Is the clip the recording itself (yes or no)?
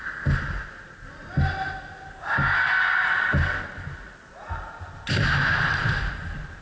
yes